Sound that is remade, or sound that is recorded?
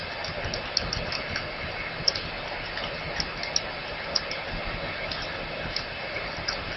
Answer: recorded